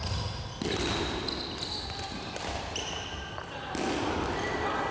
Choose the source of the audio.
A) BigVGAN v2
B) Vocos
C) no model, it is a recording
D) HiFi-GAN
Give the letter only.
C